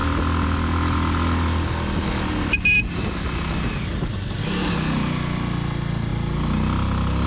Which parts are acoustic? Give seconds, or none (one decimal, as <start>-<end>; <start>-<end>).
0.0-7.3

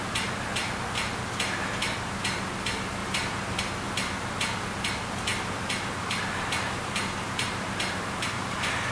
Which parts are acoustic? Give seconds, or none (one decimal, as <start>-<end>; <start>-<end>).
0.0-3.0; 3.6-5.3

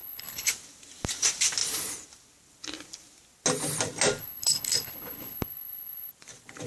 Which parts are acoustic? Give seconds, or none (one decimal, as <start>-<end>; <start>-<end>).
0.5-4.2; 6.1-6.7